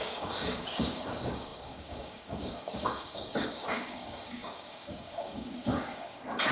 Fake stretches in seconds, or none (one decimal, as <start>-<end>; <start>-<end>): 0.0-6.5